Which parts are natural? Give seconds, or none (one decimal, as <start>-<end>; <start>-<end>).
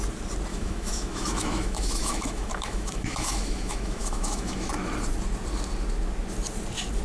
0.0-0.5; 4.7-7.0